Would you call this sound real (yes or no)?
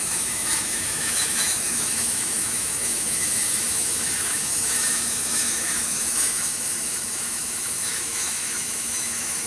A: no